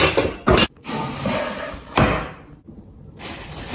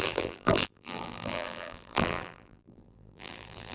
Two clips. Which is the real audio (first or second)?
first